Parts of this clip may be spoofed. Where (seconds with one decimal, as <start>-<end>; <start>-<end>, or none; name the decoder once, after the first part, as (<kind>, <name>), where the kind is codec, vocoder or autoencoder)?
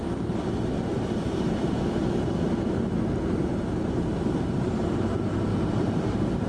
0.9-4.8 (vocoder, BigVGAN v2); 5.5-6.5